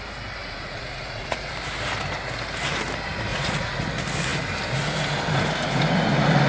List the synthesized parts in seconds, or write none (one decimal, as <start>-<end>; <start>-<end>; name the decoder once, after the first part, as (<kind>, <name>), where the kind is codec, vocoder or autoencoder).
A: 0.4-1.5 (vocoder, Vocos); 3.3-3.8